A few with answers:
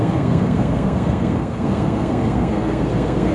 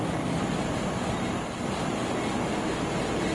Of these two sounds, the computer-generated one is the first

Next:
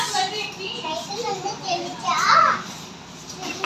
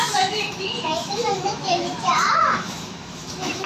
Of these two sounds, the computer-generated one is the second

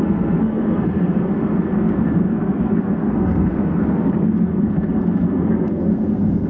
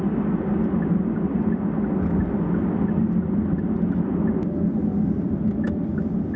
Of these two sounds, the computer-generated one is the first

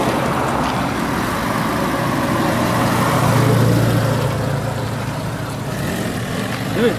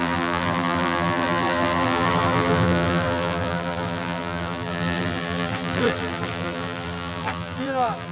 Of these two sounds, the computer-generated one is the second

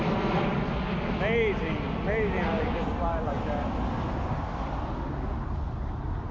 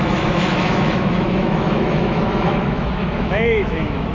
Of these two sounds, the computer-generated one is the second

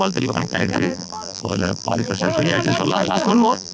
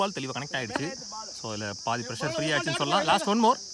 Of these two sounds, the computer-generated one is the first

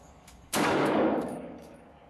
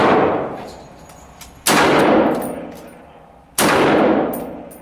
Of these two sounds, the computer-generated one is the first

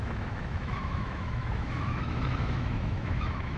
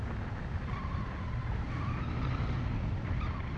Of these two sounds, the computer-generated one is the first